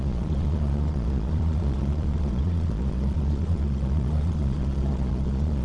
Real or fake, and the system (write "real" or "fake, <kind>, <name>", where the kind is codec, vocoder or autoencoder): fake, vocoder, Vocos